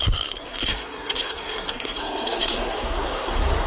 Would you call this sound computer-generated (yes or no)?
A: yes